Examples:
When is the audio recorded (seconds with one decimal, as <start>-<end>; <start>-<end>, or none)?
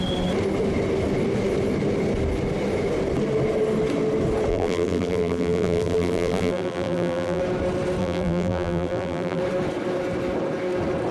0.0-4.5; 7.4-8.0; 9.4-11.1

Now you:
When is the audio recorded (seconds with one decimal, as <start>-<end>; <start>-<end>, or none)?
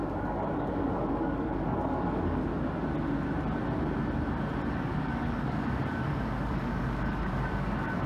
2.5-4.7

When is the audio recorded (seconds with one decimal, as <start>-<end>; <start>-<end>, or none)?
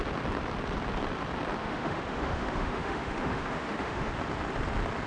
0.0-1.6; 4.1-5.1